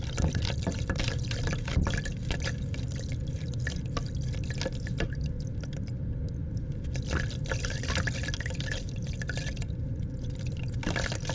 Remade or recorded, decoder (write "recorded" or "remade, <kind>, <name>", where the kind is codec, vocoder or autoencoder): recorded